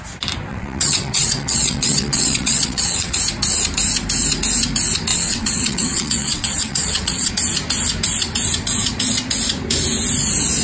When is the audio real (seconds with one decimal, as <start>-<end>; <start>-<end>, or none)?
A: 0.0-0.5; 3.2-5.1; 7.3-10.6